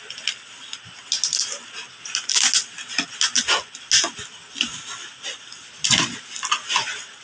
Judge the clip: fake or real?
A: real